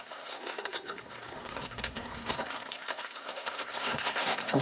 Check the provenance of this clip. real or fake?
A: fake